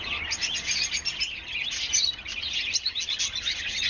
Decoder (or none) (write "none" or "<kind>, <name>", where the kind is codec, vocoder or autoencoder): none